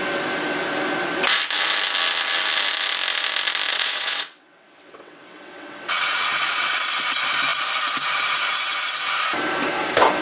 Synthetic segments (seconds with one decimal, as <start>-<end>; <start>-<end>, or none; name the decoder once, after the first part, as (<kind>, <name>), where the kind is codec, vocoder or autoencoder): 3.7-7.0 (vocoder, WaveNeXt)

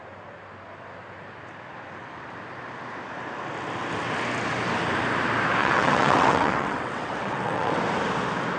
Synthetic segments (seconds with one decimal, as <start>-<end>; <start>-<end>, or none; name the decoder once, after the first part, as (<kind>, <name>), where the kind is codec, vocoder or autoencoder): 5.6-7.8 (vocoder, WaveNeXt)

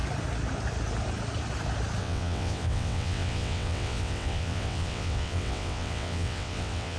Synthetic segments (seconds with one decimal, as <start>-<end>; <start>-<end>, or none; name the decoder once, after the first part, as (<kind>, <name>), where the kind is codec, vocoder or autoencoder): 2.0-7.0 (vocoder, WaveNeXt)

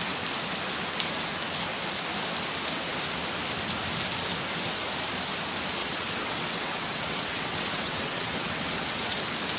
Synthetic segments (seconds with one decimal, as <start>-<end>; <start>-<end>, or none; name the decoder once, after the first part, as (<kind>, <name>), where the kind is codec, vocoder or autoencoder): 5.8-9.2 (vocoder, WaveNeXt)

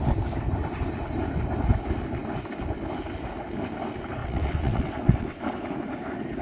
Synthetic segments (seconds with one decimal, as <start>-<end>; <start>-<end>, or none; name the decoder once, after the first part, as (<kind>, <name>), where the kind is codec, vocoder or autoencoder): 4.2-5.6 (vocoder, WaveNeXt)

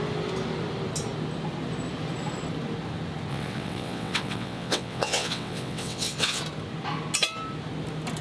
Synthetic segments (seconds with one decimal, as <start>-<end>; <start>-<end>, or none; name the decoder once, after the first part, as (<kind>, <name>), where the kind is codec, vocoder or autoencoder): 3.3-6.4 (vocoder, WaveNeXt)

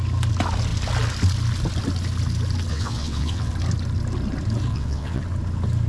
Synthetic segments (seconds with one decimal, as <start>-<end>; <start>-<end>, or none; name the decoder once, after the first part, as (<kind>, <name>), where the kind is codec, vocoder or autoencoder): 2.7-3.5 (vocoder, WaveNeXt); 4.7-5.2